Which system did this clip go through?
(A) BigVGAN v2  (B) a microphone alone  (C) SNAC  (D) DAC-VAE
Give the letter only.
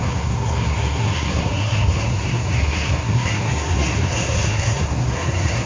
C